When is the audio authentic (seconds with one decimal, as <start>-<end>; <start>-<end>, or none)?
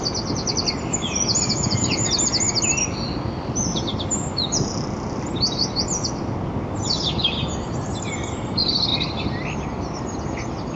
0.0-10.8